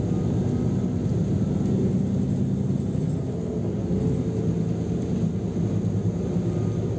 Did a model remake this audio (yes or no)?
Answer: no